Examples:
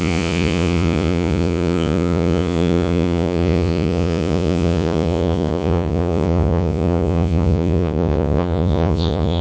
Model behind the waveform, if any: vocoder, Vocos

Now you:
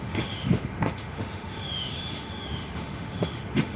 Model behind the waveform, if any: autoencoder, DAC-VAE